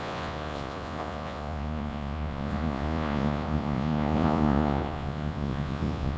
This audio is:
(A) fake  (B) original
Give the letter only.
A